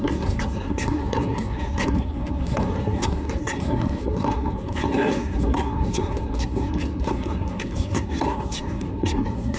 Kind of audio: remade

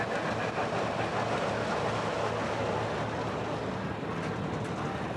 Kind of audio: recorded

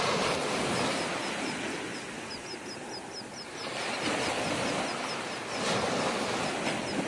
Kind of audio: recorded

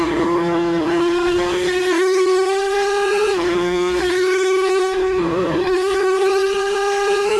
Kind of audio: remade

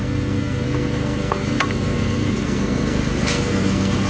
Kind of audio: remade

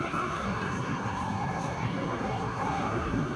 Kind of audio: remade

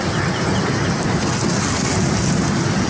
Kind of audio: recorded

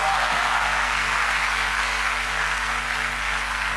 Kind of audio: remade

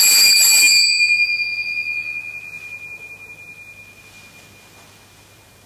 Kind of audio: recorded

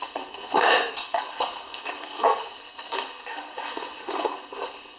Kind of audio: remade